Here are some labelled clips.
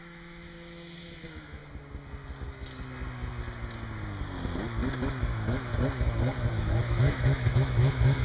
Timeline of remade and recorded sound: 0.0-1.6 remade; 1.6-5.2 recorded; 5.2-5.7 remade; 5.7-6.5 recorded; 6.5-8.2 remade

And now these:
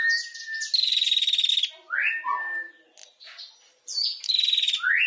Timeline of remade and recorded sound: 0.0-3.0 recorded; 3.0-4.3 remade; 4.3-5.1 recorded

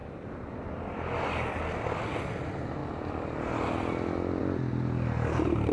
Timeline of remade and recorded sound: 0.0-5.7 recorded

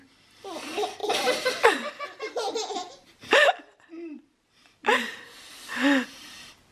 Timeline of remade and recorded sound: 0.0-1.0 recorded; 1.0-1.9 remade; 1.9-3.2 recorded; 3.2-4.6 remade; 4.6-6.7 recorded